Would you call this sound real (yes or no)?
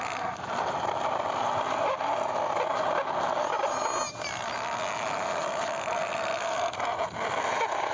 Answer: yes